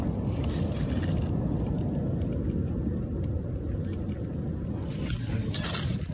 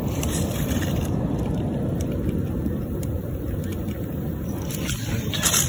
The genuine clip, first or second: first